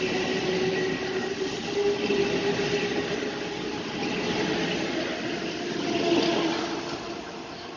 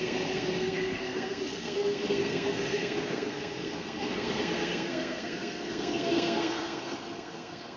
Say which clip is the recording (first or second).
first